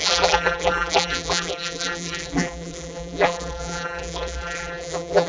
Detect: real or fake fake